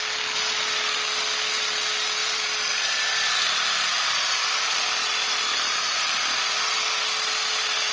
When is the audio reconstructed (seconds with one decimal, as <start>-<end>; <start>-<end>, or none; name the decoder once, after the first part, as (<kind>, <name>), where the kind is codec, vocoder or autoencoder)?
2.2-6.5 (vocoder, BigVGAN v2)